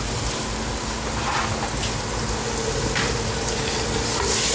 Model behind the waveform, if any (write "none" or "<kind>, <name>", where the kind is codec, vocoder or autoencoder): none